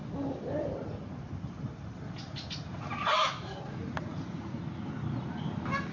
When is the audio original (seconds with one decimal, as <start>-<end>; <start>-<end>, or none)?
0.0-3.8; 4.6-5.9